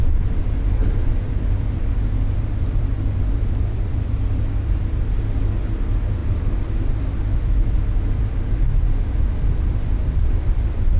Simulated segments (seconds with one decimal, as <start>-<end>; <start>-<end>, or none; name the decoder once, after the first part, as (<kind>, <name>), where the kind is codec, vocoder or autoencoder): 0.0-4.4 (vocoder, BigVGAN v2); 6.2-11.0